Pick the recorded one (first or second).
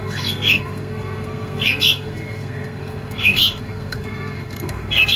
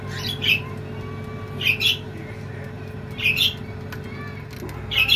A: second